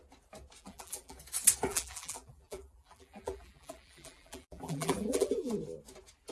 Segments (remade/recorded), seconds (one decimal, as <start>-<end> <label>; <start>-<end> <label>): 0.0-0.6 recorded; 0.6-1.2 remade; 1.2-1.7 recorded; 1.7-5.5 remade; 5.5-6.3 recorded